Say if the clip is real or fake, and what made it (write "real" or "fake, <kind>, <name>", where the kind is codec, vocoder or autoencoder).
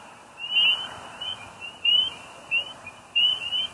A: real